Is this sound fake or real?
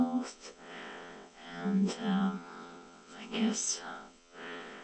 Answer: fake